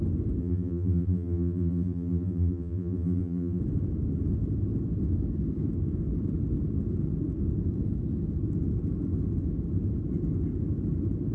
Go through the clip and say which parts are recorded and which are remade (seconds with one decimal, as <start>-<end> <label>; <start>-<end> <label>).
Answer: 0.0-0.4 recorded; 0.4-3.6 remade; 3.6-11.3 recorded